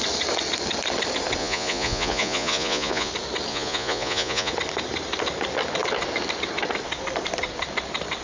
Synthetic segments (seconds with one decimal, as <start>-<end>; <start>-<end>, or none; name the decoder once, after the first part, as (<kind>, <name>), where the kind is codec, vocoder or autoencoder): 1.4-3.1 (vocoder, Vocos); 3.5-4.5